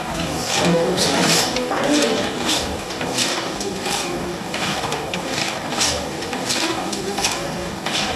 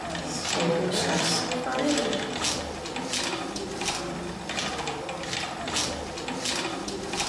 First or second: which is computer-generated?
first